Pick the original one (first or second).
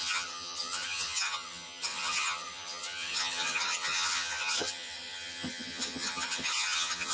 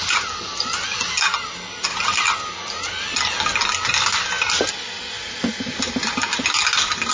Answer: second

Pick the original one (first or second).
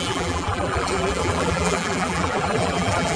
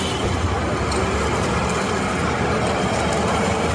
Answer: second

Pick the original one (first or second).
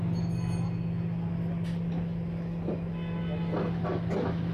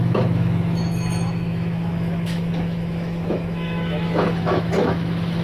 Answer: first